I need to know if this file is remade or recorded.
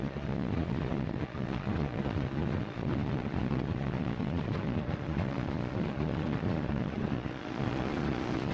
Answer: remade